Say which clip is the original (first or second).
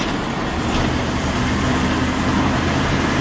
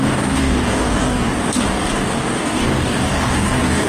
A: first